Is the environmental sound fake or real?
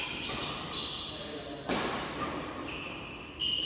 real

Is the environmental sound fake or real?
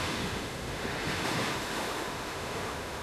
fake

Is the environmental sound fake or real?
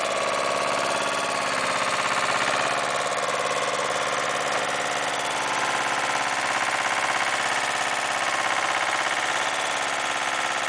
real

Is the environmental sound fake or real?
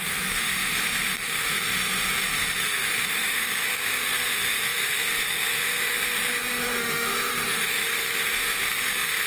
fake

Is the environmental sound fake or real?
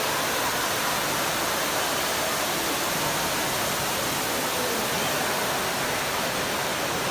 real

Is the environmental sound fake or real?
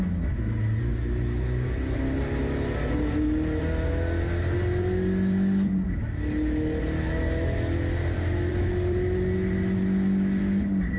real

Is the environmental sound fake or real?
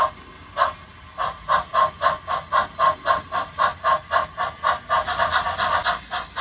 real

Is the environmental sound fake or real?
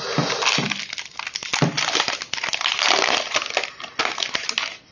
real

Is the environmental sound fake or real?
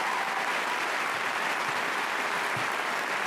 real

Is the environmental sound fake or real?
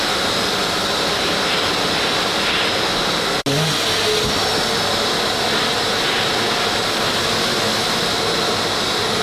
real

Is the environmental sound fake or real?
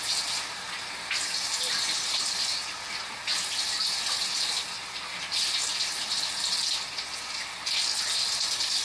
real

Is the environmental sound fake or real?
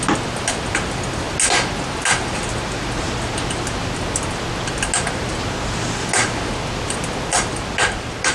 real